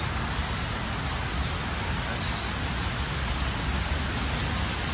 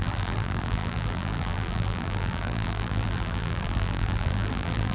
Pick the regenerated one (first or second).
second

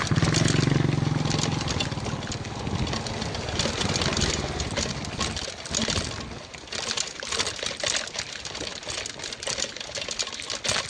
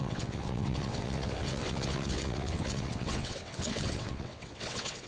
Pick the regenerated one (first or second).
second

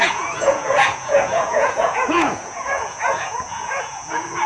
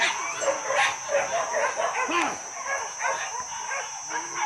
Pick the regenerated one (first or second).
first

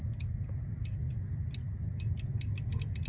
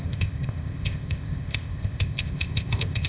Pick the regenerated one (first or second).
second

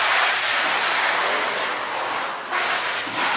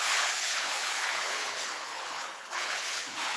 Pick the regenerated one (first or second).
second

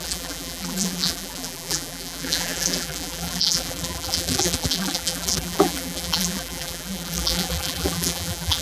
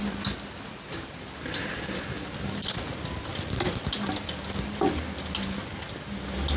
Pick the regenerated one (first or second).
first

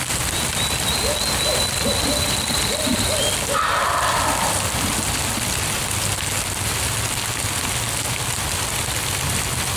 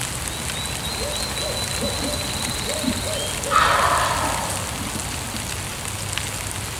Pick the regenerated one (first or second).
first